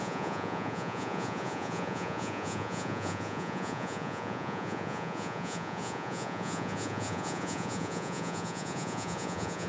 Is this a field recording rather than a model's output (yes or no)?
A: no